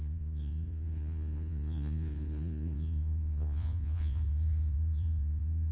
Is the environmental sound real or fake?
fake